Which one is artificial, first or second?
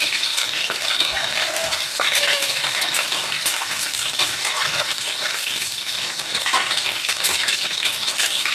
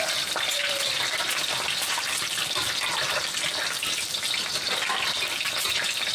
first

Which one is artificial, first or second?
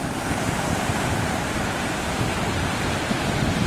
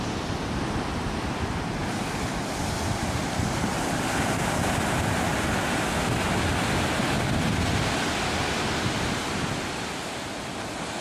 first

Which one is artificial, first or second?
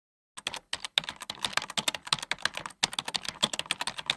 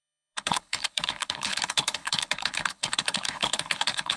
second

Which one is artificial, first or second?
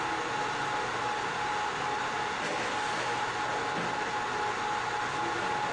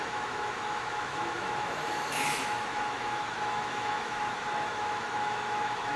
second